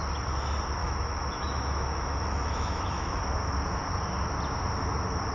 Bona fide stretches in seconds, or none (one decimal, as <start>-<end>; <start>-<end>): 0.0-0.8; 3.2-5.3